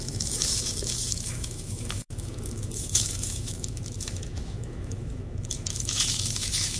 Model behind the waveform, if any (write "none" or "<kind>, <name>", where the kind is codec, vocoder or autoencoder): autoencoder, DAC-VAE